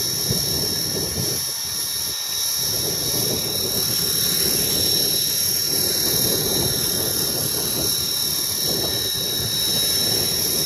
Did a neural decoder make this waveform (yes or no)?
no